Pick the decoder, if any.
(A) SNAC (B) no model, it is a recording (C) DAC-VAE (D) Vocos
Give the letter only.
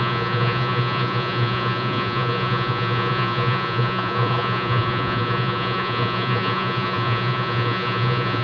D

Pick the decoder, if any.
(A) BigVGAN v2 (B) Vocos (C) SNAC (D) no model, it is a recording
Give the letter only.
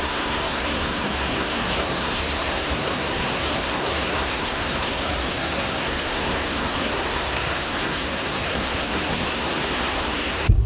C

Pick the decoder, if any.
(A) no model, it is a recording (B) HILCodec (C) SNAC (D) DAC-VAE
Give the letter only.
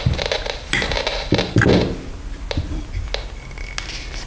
A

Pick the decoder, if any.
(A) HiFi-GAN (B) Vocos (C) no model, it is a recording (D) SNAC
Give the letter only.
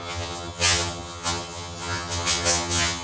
A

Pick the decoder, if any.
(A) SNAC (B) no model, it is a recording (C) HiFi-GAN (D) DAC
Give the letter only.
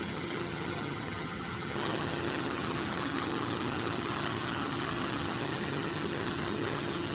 C